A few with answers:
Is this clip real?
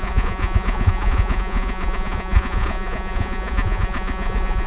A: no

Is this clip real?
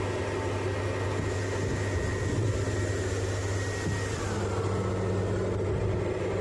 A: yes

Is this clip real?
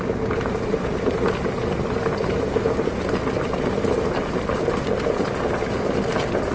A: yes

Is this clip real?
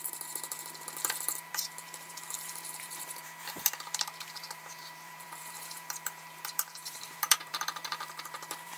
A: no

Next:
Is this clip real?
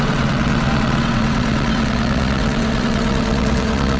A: no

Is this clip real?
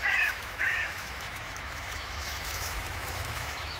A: no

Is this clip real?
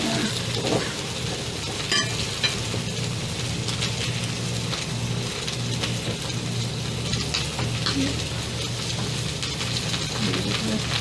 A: yes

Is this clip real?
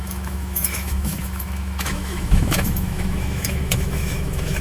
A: no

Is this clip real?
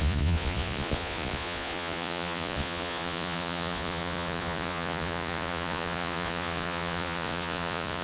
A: no